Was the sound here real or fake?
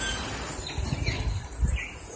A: real